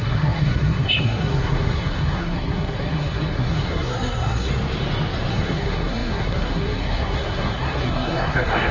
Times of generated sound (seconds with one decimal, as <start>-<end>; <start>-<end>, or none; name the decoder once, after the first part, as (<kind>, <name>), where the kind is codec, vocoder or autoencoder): 0.0-4.5 (codec, SNAC); 5.3-8.7

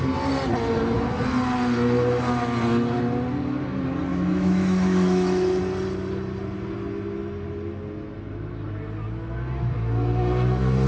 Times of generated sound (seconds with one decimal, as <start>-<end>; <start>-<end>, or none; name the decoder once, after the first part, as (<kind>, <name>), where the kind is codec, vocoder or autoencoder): 4.1-5.6 (autoencoder, DAC-VAE)